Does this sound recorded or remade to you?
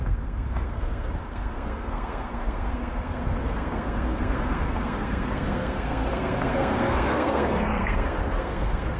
remade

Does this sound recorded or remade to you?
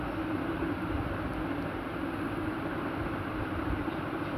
recorded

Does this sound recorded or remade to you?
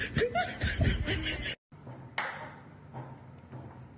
recorded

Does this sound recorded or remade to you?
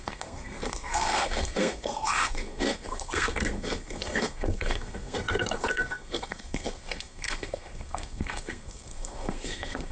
remade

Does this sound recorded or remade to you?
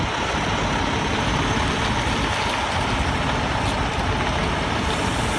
recorded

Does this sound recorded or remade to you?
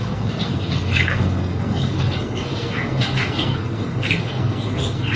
remade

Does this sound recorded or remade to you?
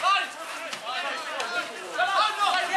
recorded